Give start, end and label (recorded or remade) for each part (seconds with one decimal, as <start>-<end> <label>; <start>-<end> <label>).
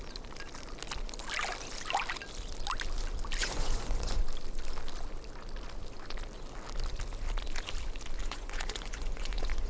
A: 0.0-3.4 recorded; 3.4-4.2 remade; 4.2-8.2 recorded; 8.2-9.7 remade